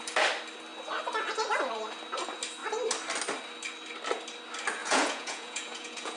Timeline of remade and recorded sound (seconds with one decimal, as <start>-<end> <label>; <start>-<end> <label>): 0.0-4.8 recorded; 4.8-6.2 remade